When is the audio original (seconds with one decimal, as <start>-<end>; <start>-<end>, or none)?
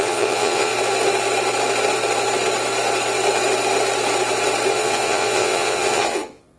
0.7-4.7